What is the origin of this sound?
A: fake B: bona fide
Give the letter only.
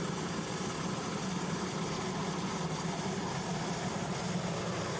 B